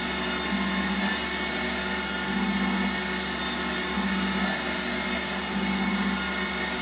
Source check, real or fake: real